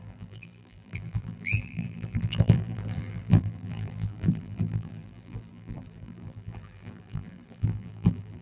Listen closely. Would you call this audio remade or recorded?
remade